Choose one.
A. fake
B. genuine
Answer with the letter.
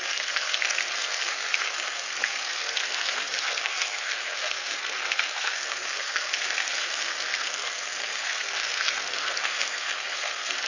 A